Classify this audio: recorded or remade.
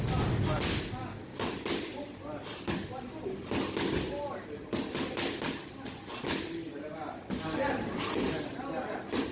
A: recorded